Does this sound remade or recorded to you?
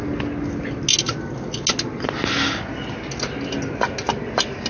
recorded